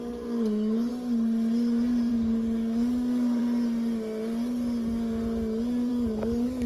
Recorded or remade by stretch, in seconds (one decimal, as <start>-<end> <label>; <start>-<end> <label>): 0.0-0.9 remade; 0.9-2.1 recorded; 2.1-3.4 remade; 3.4-5.9 recorded; 5.9-6.7 remade